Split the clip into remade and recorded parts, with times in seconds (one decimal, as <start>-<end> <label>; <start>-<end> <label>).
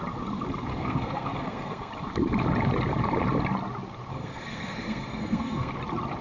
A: 0.0-0.7 recorded; 0.7-1.9 remade; 1.9-4.1 recorded; 4.1-5.7 remade; 5.7-6.2 recorded